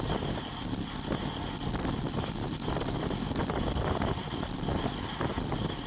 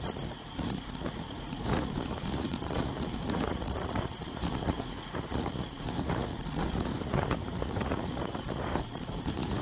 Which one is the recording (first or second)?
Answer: first